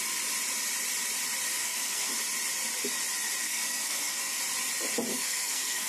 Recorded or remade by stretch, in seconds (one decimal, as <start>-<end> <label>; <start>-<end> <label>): 0.0-1.6 recorded; 1.6-2.1 remade; 2.1-3.4 recorded; 3.4-4.4 remade; 4.4-5.1 recorded; 5.1-5.9 remade